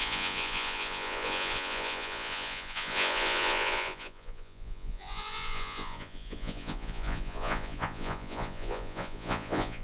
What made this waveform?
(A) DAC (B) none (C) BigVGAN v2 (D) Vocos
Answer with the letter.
D